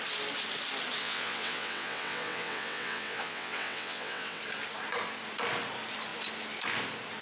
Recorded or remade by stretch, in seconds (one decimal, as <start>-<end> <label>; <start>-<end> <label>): 0.0-1.0 recorded; 1.0-4.4 remade; 4.4-7.2 recorded